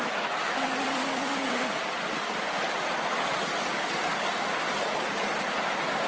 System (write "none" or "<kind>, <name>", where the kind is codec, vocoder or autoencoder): none